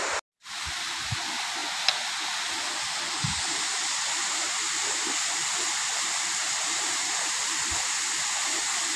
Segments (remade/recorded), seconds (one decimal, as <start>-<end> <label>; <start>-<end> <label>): 0.0-6.4 recorded; 6.4-7.6 remade; 7.6-9.0 recorded